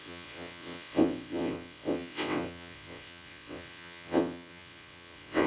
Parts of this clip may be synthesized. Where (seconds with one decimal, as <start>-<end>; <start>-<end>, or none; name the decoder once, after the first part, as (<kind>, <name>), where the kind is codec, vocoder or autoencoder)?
0.0-5.5 (vocoder, WaveNeXt)